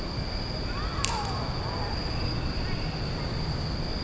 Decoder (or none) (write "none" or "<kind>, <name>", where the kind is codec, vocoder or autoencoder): none